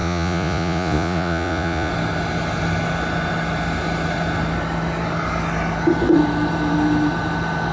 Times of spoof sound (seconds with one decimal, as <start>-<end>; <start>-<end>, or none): 0.0-1.9